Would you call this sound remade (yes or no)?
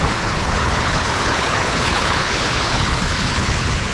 yes